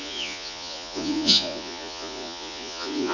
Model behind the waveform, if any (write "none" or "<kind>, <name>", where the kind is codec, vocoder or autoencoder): vocoder, Vocos